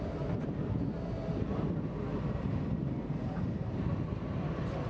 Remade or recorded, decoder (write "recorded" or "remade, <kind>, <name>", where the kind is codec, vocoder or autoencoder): recorded